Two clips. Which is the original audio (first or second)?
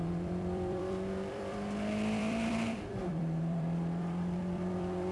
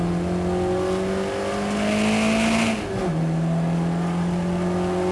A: second